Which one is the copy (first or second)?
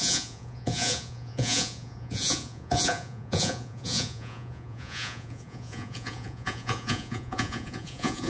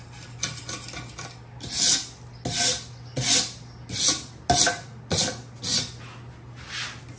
first